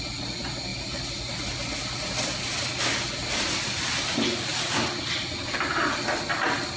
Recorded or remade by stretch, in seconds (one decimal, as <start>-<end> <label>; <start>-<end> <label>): 0.0-6.8 recorded